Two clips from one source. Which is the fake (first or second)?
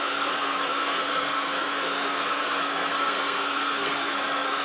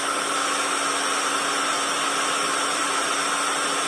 first